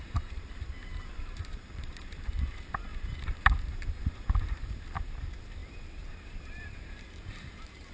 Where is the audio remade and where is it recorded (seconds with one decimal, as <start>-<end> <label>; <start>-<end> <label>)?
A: 0.0-7.9 remade